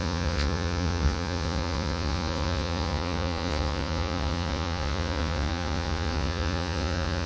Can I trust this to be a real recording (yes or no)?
no